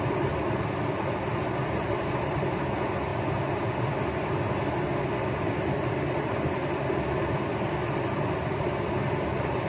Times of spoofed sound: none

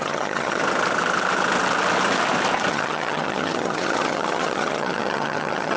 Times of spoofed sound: 0.0-0.6 (vocoder, HiFi-GAN); 2.7-5.8

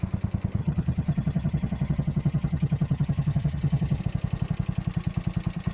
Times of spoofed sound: 0.6-4.0 (vocoder, HiFi-GAN)

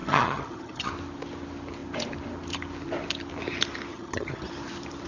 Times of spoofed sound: 0.0-0.9 (vocoder, HiFi-GAN); 3.9-4.5